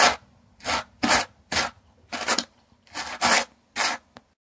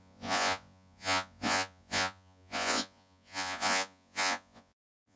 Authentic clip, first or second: first